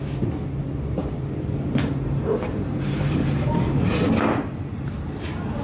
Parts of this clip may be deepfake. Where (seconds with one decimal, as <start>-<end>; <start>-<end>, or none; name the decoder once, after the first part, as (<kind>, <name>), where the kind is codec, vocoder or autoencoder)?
1.0-4.0 (vocoder, BigVGAN v2)